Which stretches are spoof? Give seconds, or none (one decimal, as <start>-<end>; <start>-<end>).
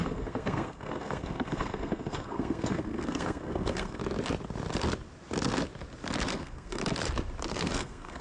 0.0-4.0; 6.3-6.8; 7.5-8.2